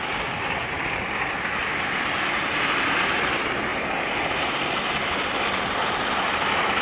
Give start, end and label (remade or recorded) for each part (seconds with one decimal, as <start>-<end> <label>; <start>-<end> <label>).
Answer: 0.0-6.8 recorded